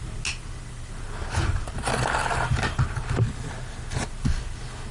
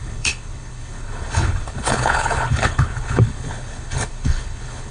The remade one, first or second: second